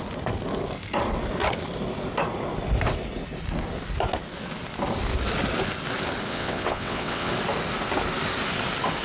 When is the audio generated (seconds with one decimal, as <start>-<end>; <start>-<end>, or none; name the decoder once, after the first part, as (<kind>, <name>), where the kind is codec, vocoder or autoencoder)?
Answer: 6.3-7.3 (vocoder, WaveNeXt)